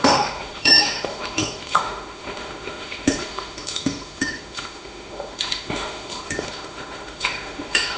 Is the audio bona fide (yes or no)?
no